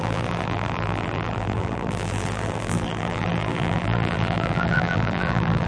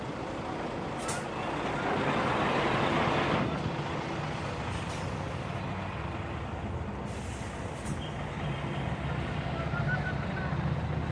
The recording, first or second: second